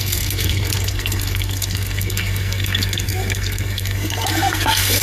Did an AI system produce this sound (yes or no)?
yes